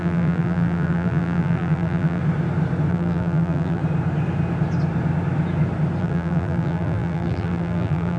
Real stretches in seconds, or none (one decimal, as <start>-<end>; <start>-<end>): 2.2-2.9; 3.8-6.0

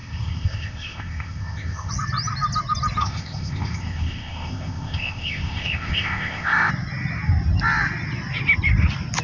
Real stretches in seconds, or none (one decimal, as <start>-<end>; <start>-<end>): 1.9-3.0; 6.7-9.2

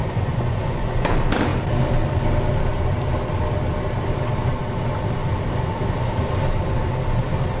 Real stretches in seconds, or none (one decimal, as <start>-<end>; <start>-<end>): 1.1-7.6

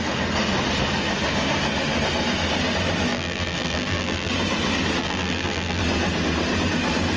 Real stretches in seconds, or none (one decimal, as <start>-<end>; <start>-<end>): 0.0-3.1; 4.3-5.0; 5.8-7.2

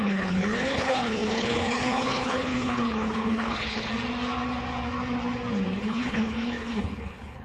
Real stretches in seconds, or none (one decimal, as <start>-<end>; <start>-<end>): 3.9-5.7

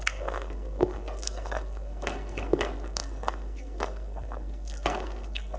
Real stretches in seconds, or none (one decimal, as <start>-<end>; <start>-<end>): none

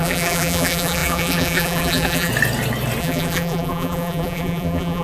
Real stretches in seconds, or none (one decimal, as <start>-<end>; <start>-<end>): 2.3-3.0

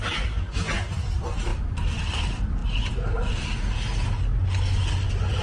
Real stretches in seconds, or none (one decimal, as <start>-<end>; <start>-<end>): 0.0-5.4